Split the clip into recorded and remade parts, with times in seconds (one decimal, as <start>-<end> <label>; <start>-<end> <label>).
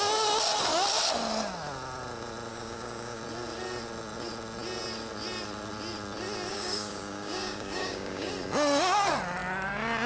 0.0-2.5 recorded; 2.5-3.2 remade; 3.2-6.5 recorded; 6.5-8.3 remade; 8.3-10.1 recorded